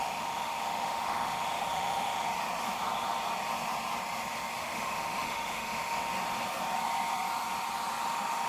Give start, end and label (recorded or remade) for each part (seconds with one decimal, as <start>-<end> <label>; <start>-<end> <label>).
0.0-2.3 remade; 2.3-4.6 recorded; 4.6-6.1 remade; 6.1-8.0 recorded; 8.0-8.5 remade